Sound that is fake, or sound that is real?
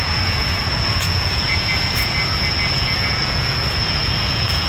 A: fake